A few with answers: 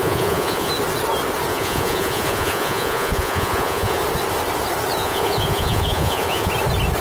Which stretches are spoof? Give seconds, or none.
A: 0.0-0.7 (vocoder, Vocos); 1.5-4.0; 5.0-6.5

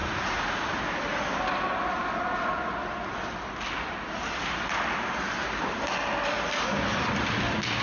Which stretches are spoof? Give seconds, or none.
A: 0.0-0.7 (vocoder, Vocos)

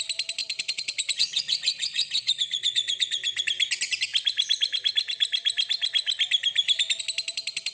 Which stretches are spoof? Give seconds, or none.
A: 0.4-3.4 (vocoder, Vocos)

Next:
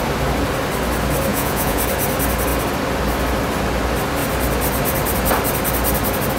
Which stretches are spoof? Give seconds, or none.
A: 1.3-1.8 (vocoder, Vocos)

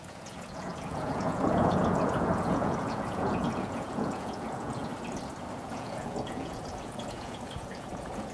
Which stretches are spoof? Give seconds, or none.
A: 0.0-4.9 (vocoder, Vocos); 5.6-8.3